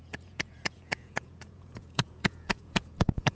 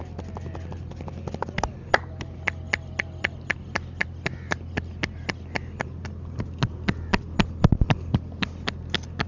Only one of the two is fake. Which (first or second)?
first